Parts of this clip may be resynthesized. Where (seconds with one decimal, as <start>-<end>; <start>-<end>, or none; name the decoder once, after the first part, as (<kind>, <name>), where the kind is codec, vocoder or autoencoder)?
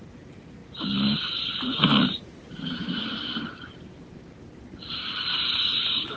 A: 0.6-4.3 (vocoder, BigVGAN v2)